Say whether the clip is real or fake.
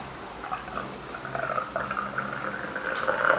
real